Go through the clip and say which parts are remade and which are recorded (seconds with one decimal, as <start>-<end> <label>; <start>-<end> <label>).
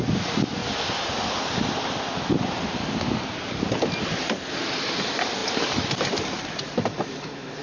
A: 0.0-0.6 remade; 0.6-4.5 recorded; 4.5-7.6 remade